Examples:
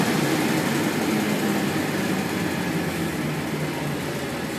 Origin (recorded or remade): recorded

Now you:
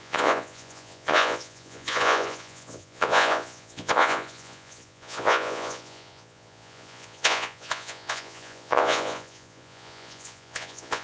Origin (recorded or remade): remade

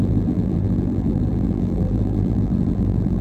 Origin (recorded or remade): remade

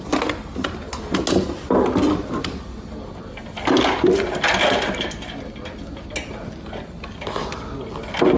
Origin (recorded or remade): recorded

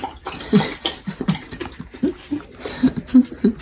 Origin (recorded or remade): remade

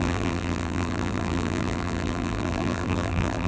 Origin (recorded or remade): remade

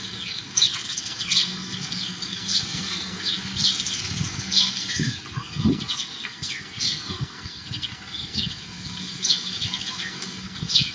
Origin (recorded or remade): remade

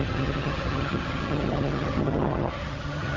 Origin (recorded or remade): remade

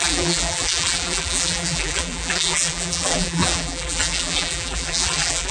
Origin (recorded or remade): remade